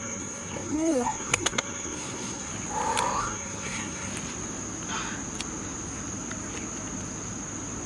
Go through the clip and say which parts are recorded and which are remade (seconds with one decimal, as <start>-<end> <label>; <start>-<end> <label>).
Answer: 0.0-2.5 remade; 2.5-3.2 recorded; 3.2-4.1 remade; 4.1-7.9 recorded